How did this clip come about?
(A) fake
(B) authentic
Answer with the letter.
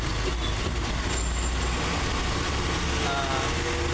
B